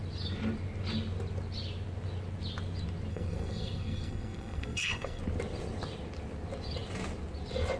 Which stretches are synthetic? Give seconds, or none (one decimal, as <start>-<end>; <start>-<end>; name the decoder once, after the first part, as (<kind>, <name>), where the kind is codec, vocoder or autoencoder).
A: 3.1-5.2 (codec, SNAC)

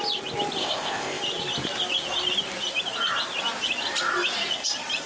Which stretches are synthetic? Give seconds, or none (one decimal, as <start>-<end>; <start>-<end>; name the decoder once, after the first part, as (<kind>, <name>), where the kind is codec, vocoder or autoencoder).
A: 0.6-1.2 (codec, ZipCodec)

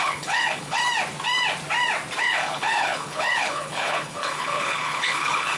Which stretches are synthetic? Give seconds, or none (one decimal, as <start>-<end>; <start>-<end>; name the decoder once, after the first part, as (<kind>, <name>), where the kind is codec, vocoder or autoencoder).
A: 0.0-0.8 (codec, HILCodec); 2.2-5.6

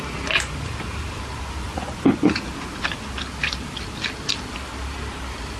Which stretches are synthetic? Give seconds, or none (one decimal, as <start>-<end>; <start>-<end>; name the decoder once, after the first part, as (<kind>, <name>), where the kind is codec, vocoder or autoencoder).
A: 1.6-2.5 (vocoder, Vocos)

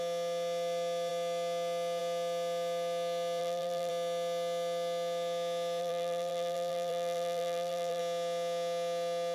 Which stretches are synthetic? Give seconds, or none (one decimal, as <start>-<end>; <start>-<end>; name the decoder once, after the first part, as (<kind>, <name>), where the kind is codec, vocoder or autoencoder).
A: 3.4-3.9 (vocoder, BigVGAN v2); 5.8-8.0

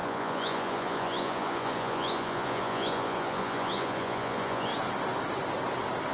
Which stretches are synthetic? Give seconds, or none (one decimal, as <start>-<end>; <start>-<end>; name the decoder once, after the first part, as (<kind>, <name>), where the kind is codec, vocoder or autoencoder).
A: 0.0-4.7 (vocoder, Vocos)

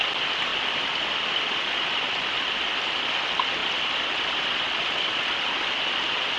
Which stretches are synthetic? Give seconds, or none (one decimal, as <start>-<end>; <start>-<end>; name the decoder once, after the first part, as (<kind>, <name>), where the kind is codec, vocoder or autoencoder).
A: 0.5-2.5 (vocoder, BigVGAN v2)

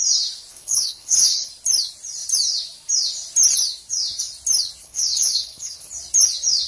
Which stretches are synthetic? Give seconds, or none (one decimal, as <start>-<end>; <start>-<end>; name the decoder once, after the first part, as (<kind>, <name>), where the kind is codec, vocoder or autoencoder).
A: 0.5-1.5 (codec, HILCodec); 4.8-5.9